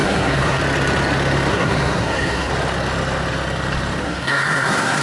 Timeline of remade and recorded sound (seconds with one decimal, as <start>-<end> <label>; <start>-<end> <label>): 0.0-0.6 remade; 0.6-1.5 recorded; 1.5-2.5 remade; 2.5-4.0 recorded; 4.0-5.0 remade

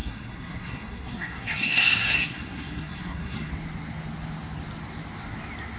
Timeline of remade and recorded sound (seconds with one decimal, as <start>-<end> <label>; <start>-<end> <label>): 0.0-3.5 remade; 3.5-5.8 recorded

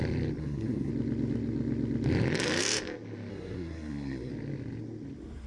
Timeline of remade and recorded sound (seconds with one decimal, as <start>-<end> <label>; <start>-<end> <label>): 0.0-0.4 recorded; 0.4-0.9 remade; 0.9-3.3 recorded; 3.3-4.3 remade; 4.3-5.5 recorded

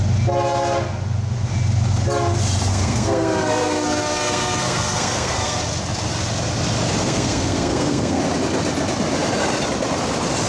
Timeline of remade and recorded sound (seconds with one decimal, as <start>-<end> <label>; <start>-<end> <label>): 0.0-2.7 recorded; 2.7-5.6 remade; 5.6-7.0 recorded; 7.0-8.2 remade; 8.2-10.5 recorded

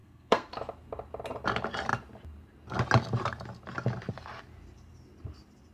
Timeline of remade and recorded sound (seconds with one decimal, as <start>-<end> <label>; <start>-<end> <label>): 0.0-0.5 remade; 0.5-5.7 recorded

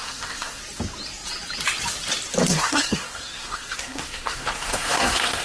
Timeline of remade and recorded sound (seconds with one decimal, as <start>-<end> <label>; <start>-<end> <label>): 0.0-0.6 remade; 0.6-2.5 recorded; 2.5-5.4 remade